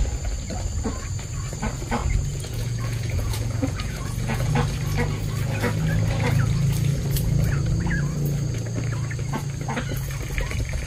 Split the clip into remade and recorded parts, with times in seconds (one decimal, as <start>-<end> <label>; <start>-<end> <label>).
0.0-2.0 recorded; 2.0-4.5 remade; 4.5-10.9 recorded